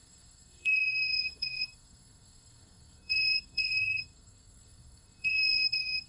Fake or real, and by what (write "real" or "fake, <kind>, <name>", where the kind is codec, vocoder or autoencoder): fake, codec, SNAC